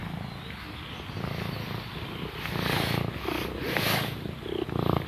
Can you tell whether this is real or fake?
real